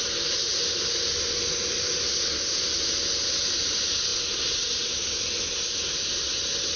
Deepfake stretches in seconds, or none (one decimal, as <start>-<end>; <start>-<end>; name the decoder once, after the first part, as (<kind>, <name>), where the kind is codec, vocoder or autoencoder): none